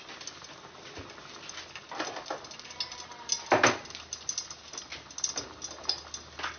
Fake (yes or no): no